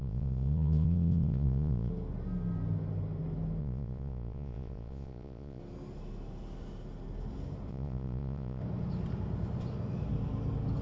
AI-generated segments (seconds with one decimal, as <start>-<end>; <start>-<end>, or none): 0.0-1.9; 3.6-5.6; 7.7-8.6